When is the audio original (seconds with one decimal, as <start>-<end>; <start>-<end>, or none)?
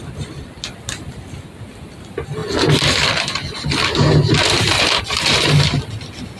0.0-6.4